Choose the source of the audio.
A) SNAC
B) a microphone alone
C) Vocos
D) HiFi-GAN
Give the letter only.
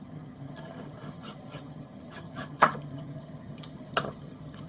D